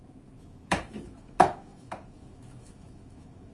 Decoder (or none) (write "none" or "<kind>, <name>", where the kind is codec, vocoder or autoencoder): autoencoder, DAC-VAE